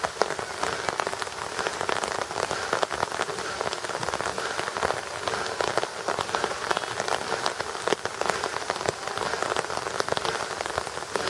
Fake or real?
real